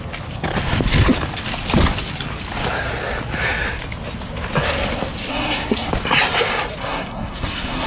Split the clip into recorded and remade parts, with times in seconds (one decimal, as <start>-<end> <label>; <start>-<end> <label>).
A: 0.0-5.3 recorded; 5.3-5.9 remade; 5.9-6.8 recorded; 6.8-7.9 remade